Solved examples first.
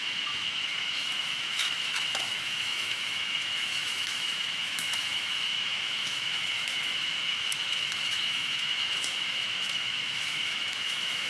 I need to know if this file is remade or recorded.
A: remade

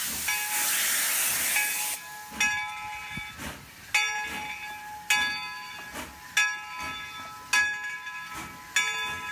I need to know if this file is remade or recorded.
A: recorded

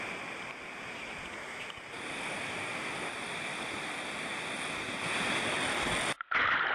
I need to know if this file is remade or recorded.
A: recorded